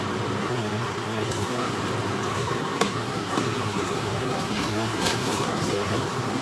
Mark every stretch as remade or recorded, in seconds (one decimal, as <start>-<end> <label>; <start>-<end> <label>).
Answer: 0.0-0.4 recorded; 0.4-1.8 remade; 1.8-2.3 recorded; 2.3-6.4 remade